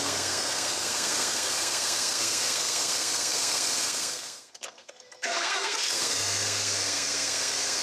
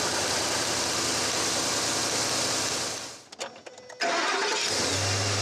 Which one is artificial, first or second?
first